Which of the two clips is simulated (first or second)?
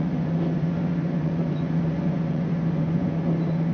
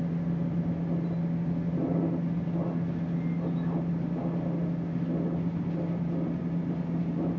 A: first